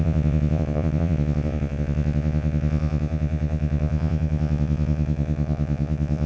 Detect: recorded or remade remade